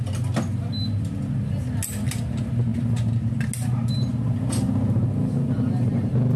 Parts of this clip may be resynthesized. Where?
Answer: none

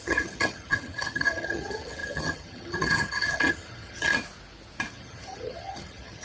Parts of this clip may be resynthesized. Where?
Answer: 0.0-4.1 (vocoder, HiFi-GAN); 4.9-6.2

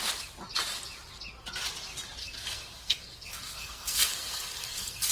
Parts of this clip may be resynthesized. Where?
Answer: 2.2-5.1 (codec, SNAC)

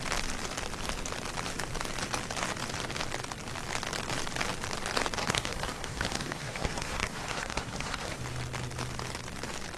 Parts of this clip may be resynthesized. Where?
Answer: 5.2-8.2 (codec, SNAC)

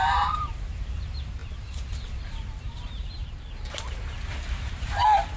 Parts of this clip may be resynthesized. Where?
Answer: 0.0-5.4 (vocoder, BigVGAN v2)

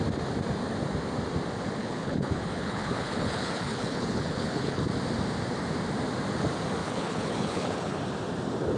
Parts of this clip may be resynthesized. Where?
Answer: 1.8-4.8 (codec, HILCodec); 6.8-8.0